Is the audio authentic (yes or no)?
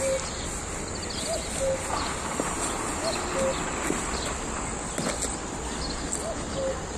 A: yes